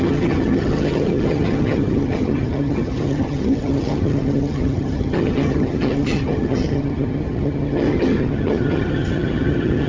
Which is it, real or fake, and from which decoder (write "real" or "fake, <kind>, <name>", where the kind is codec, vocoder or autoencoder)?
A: fake, vocoder, HiFi-GAN